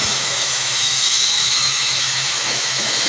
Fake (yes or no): yes